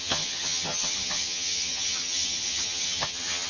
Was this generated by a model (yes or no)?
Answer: yes